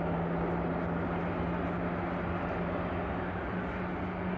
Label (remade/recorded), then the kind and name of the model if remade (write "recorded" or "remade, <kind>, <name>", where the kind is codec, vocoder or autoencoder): recorded